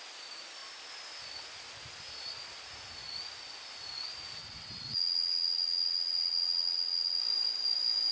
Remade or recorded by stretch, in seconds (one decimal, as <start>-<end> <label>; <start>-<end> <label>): 0.0-4.4 recorded; 4.4-7.2 remade; 7.2-8.1 recorded